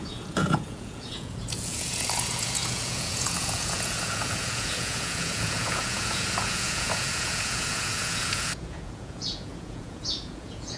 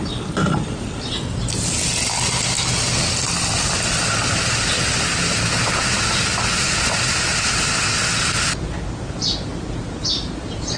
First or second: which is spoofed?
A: first